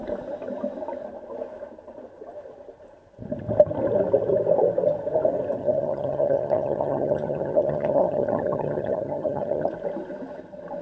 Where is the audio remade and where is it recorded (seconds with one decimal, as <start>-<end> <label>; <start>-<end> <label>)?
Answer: 0.0-5.6 recorded; 5.6-9.7 remade; 9.7-10.8 recorded